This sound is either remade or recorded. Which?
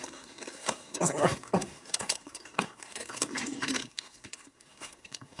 remade